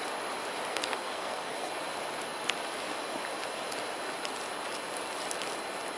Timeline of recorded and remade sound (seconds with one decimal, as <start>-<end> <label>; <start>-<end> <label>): 0.0-0.7 recorded; 0.7-1.7 remade; 1.7-6.0 recorded